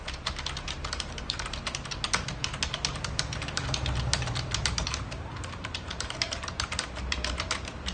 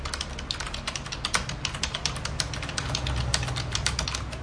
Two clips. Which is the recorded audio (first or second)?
second